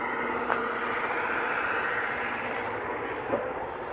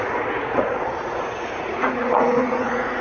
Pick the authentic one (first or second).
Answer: first